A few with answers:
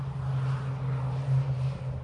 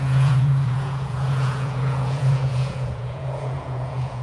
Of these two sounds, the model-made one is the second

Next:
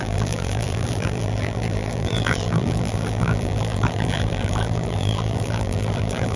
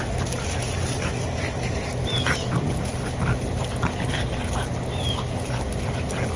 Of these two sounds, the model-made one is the first